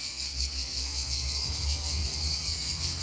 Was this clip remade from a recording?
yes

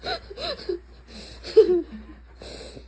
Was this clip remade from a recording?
no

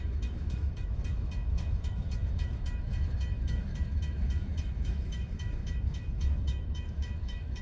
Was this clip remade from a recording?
yes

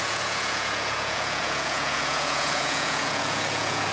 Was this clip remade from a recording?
yes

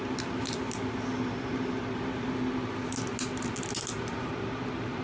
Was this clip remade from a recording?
no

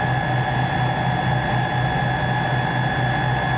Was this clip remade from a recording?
no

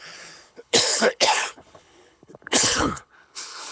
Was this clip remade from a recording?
yes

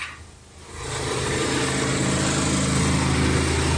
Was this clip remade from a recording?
no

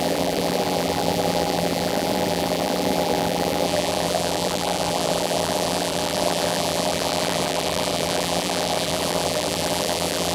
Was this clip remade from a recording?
yes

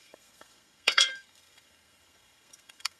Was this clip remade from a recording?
yes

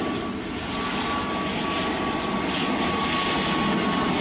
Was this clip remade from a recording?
no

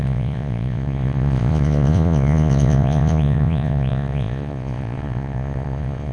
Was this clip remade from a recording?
yes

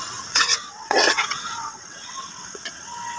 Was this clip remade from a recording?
yes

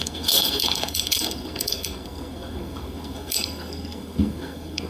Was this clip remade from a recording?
yes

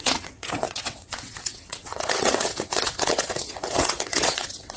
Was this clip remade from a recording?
yes